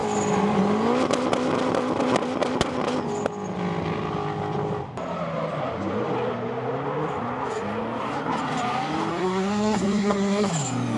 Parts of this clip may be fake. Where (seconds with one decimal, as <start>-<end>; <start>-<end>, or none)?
9.1-10.5